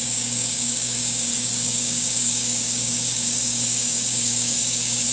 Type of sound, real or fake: fake